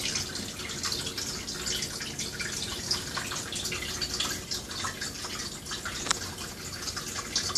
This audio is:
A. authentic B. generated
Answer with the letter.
A